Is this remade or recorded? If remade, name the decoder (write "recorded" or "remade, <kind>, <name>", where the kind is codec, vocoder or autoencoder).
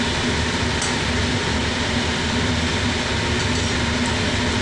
recorded